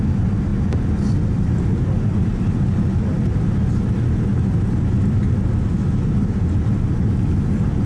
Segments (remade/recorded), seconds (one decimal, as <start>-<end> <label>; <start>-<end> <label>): 0.0-4.3 recorded; 4.3-4.9 remade; 4.9-7.9 recorded